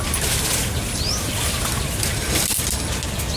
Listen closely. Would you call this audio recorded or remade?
recorded